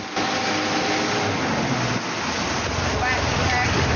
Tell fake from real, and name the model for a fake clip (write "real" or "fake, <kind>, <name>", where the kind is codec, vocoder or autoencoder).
real